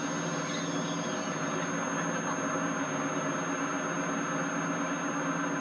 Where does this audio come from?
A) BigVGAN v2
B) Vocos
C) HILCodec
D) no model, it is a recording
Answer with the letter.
D